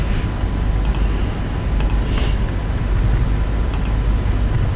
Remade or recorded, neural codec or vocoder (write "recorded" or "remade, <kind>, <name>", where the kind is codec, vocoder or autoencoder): recorded